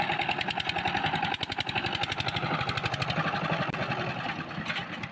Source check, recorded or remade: recorded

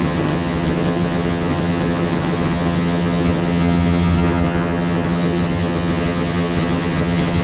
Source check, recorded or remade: remade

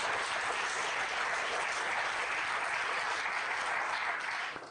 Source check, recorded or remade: recorded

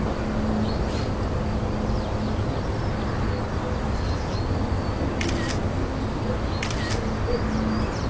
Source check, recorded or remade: recorded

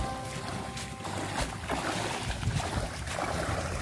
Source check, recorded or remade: recorded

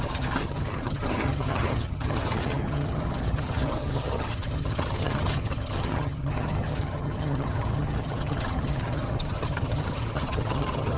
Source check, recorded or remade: remade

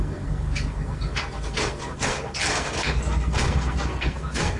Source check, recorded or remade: remade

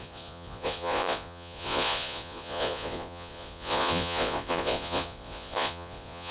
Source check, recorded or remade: remade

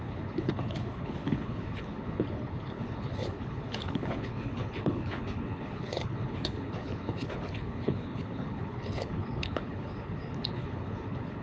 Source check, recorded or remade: remade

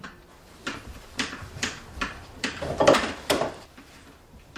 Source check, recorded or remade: remade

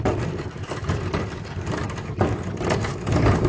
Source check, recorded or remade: recorded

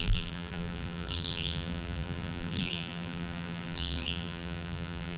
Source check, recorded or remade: remade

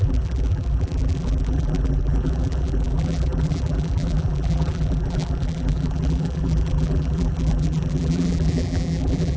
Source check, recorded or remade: remade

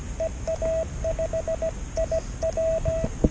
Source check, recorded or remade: recorded